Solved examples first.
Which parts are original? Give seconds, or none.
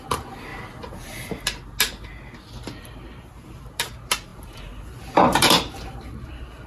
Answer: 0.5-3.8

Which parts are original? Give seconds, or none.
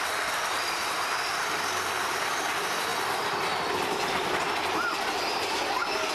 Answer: 0.0-0.5; 2.4-6.1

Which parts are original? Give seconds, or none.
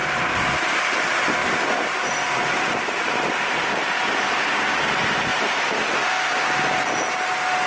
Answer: 0.8-1.4; 3.8-5.3; 7.1-7.7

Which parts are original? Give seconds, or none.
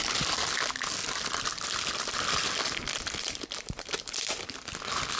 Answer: 0.0-1.0; 4.1-5.2